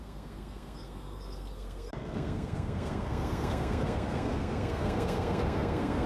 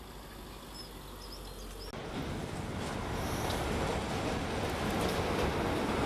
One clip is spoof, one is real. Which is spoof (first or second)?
first